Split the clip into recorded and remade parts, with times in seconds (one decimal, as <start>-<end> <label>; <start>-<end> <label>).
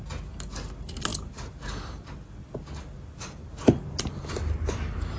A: 0.0-5.2 recorded